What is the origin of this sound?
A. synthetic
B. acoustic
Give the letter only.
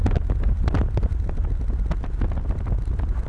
B